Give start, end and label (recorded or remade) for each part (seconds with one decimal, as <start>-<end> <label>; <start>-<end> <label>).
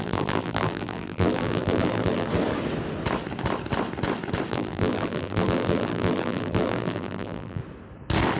0.0-2.3 remade; 2.3-4.5 recorded; 4.5-7.6 remade; 7.6-8.4 recorded